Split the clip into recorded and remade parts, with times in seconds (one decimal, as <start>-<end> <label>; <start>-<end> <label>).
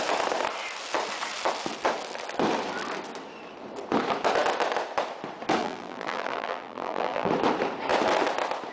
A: 0.0-5.6 recorded; 5.6-7.3 remade; 7.3-8.7 recorded